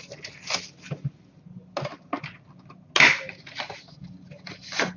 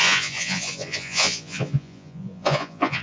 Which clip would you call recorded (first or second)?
first